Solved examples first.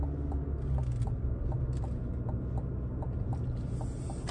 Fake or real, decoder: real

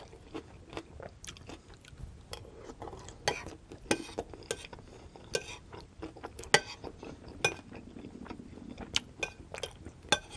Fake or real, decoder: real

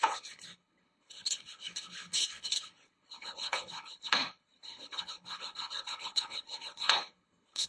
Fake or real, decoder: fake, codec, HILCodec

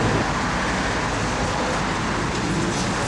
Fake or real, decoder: real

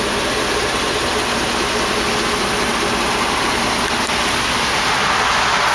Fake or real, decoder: real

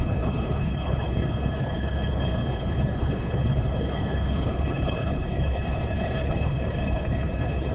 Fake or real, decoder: fake, codec, HILCodec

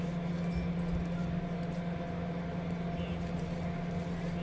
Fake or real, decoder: real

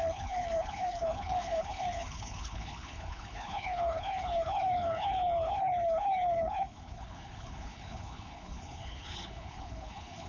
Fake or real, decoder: fake, codec, HILCodec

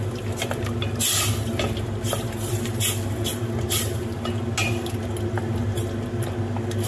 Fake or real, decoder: real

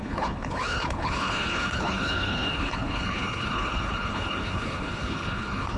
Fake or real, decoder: fake, codec, HILCodec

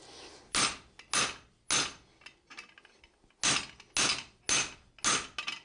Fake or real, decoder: real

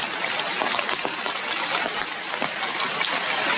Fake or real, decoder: real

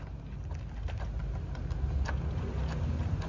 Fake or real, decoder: real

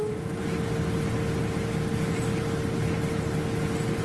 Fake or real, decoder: real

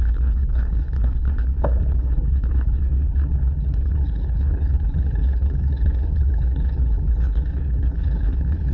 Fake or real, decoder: fake, codec, HILCodec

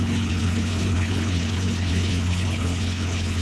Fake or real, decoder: fake, codec, HILCodec